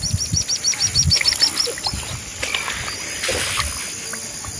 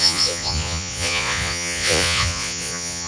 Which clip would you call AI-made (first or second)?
second